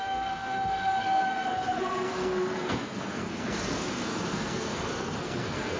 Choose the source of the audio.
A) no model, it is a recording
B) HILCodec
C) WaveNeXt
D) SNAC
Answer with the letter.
D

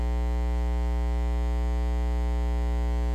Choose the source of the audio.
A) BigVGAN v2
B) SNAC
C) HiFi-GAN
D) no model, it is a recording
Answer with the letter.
D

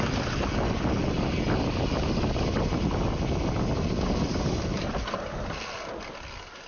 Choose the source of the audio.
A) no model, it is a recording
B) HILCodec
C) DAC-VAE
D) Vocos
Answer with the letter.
A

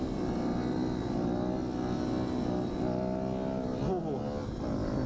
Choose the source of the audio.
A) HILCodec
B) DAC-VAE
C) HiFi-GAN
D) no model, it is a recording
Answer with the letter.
D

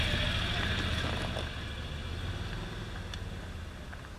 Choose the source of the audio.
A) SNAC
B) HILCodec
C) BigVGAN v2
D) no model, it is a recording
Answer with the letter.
D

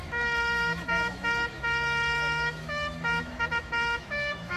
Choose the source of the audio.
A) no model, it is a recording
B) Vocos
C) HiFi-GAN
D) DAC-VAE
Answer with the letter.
D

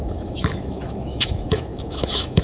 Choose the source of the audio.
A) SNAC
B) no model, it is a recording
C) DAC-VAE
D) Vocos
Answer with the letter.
C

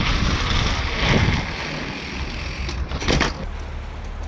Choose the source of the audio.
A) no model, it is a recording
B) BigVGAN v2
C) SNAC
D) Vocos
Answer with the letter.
A